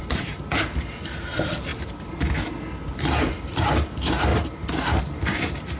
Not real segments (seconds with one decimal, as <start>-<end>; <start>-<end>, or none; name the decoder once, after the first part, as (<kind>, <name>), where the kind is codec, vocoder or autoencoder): 0.0-1.7 (vocoder, BigVGAN v2); 2.9-4.3; 5.0-5.8